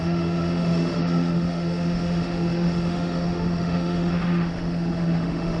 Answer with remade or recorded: remade